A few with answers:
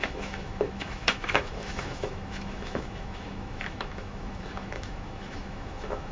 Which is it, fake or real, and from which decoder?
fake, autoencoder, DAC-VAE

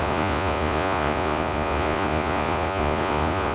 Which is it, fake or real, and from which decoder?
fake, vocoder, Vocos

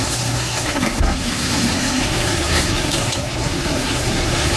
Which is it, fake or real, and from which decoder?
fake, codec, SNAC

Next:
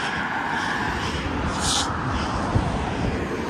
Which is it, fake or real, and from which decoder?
real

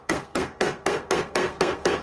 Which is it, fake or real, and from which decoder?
fake, codec, SNAC